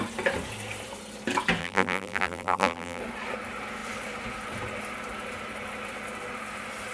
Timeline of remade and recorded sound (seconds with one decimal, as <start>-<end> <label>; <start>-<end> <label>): 0.0-1.6 recorded; 1.6-3.0 remade; 3.0-6.9 recorded